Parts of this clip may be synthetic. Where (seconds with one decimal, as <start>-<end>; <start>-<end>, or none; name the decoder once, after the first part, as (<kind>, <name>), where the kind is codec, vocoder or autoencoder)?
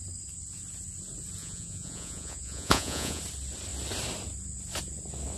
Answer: 1.4-3.2 (vocoder, Vocos)